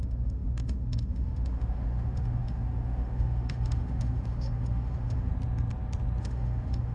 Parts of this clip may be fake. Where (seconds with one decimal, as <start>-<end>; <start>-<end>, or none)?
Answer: 0.0-5.3; 6.2-6.9